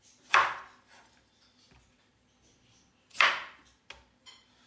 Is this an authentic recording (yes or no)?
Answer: yes